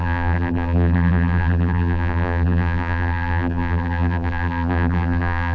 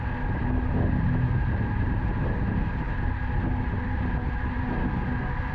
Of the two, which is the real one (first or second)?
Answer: second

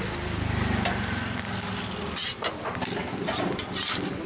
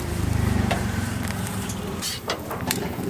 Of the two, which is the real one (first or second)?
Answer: first